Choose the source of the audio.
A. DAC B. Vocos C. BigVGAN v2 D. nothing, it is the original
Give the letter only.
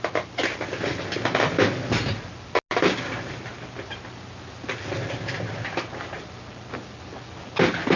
D